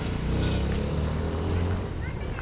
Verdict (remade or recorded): recorded